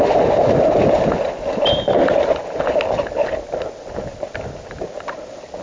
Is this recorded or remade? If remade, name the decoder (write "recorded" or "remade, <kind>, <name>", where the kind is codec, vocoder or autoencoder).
recorded